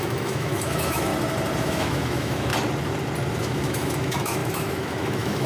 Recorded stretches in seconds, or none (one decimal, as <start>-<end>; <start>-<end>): 1.1-1.6; 2.5-3.3